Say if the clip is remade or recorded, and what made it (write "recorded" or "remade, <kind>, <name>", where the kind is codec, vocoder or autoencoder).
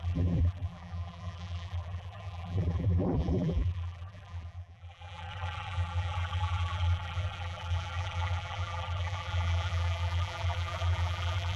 remade, vocoder, BigVGAN v2